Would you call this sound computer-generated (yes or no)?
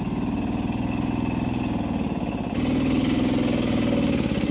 no